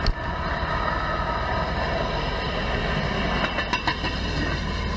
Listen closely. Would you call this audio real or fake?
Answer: real